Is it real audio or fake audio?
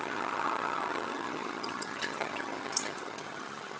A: fake